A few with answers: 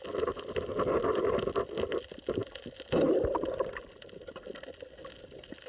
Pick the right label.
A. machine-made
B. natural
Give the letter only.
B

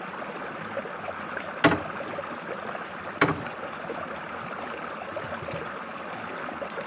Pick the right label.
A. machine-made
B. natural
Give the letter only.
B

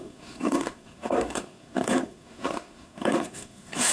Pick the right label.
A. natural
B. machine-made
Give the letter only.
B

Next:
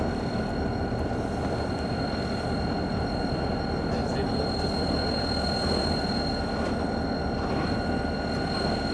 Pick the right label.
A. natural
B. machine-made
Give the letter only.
A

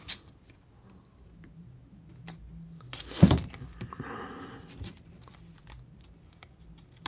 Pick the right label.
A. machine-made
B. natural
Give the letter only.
B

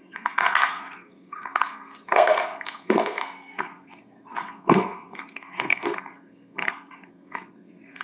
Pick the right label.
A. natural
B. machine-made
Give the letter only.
B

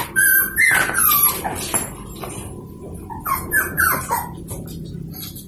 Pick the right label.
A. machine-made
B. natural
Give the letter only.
B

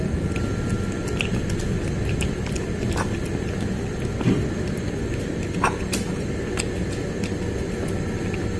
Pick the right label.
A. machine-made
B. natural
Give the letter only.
B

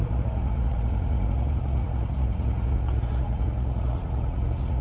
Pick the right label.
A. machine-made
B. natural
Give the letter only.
A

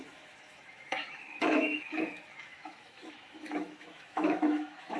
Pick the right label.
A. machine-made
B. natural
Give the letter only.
A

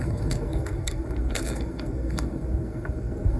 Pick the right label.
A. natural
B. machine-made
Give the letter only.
B